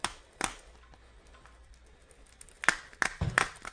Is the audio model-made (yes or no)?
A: no